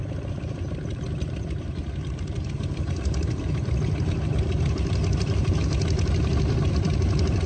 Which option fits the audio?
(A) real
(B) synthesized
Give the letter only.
B